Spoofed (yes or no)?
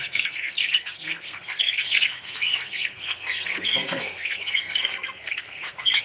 yes